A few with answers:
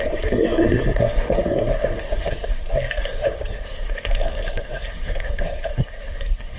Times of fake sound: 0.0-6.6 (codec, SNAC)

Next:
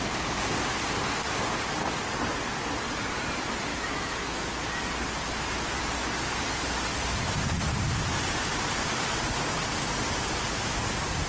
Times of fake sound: 3.7-4.7 (autoencoder, DAC-VAE)

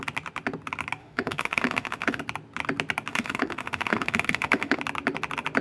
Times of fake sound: 1.0-2.2 (autoencoder, DAC-VAE); 3.1-4.8

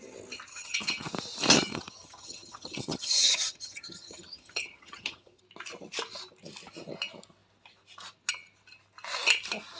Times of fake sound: 0.5-1.1 (vocoder, HiFi-GAN); 1.5-5.4

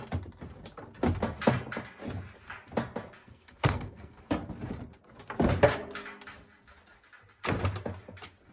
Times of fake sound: 3.2-4.2 (codec, SNAC)

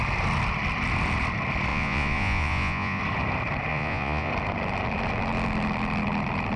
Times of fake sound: 1.7-3.0 (vocoder, Vocos); 3.7-4.3

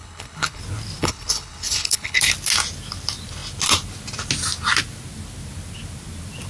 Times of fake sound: 0.0-0.6 (codec, HILCodec); 1.0-2.2